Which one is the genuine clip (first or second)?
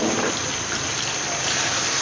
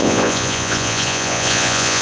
first